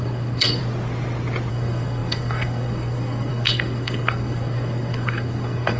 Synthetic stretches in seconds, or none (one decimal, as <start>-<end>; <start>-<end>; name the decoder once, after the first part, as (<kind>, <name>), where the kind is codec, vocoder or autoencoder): 0.0-0.6 (codec, SNAC); 1.5-5.8